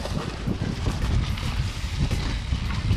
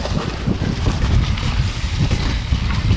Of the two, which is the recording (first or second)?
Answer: first